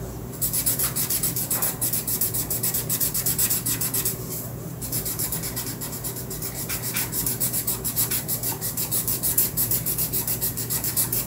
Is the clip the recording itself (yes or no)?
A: no